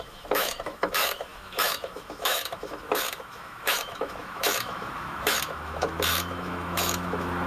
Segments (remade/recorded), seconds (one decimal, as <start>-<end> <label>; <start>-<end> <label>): 0.0-7.5 remade